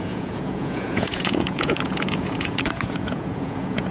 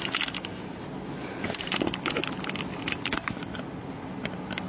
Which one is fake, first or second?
first